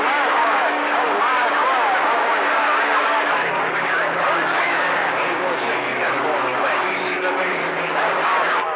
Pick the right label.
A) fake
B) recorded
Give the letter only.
A